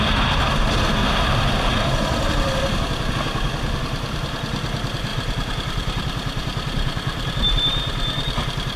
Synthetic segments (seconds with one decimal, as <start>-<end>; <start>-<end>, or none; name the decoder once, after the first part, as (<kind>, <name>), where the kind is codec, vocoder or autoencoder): 1.0-3.1 (vocoder, BigVGAN v2); 5.1-8.8